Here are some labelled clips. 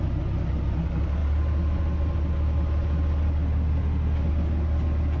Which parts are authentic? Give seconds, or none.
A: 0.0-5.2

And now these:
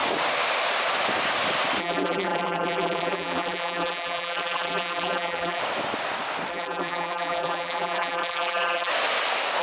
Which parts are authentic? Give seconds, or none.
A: 0.0-1.8; 5.6-6.5; 8.9-9.6

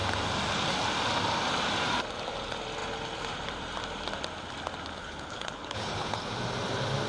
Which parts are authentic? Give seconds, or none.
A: 0.0-5.0; 6.2-7.1